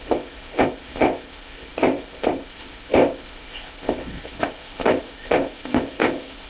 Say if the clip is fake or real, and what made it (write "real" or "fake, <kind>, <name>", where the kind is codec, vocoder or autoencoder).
fake, codec, ZipCodec